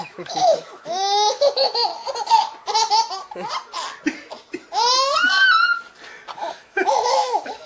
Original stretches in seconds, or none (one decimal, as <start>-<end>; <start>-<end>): 1.9-6.5